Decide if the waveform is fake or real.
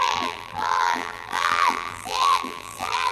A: fake